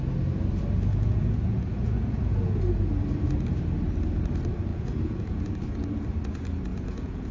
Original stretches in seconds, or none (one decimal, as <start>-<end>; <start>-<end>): 0.0-0.9; 2.6-4.7; 5.4-6.7